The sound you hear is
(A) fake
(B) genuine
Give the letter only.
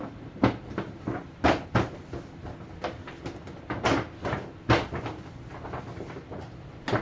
B